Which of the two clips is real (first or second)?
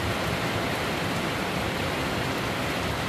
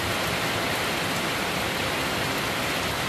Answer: second